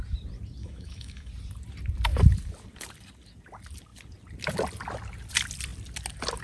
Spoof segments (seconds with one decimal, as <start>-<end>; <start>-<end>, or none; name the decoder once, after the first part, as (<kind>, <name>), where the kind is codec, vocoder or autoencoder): 0.6-1.3 (autoencoder, DAC-VAE)